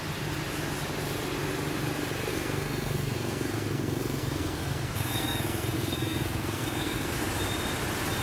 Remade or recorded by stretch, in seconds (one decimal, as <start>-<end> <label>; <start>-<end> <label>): 0.0-2.3 recorded; 2.3-7.2 remade; 7.2-8.2 recorded

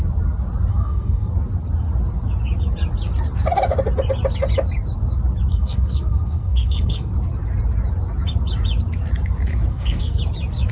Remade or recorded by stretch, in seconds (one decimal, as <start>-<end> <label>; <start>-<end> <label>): 0.0-0.7 recorded; 0.7-1.3 remade; 1.3-5.5 recorded; 5.5-7.1 remade; 7.1-9.7 recorded; 9.7-10.2 remade; 10.2-10.7 recorded

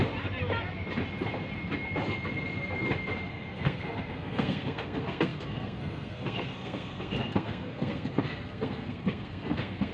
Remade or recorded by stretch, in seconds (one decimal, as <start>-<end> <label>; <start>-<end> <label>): 0.0-3.3 recorded; 3.3-9.9 remade

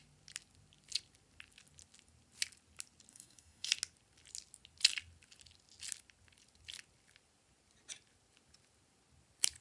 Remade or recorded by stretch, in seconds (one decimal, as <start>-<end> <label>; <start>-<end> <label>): 0.0-3.1 recorded; 3.1-3.7 remade; 3.7-9.6 recorded